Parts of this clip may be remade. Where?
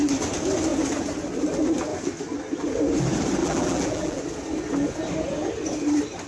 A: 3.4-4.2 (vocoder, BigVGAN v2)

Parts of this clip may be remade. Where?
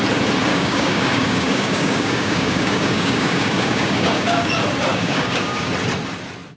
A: 0.5-4.5 (codec, DAC); 4.9-5.7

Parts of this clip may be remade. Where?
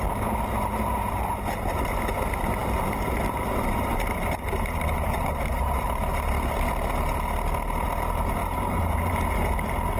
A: 2.6-6.1 (vocoder, BigVGAN v2); 8.4-9.1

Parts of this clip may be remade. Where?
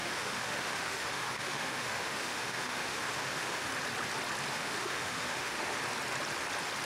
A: 0.0-3.7 (autoencoder, DAC-VAE); 4.5-5.8